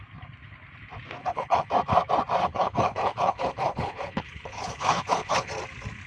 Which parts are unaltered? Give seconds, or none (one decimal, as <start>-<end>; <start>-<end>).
0.0-1.2; 1.7-2.4; 5.5-6.1